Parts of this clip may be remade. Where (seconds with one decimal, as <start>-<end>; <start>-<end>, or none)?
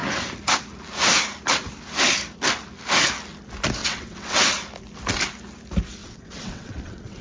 3.8-4.4; 6.0-7.2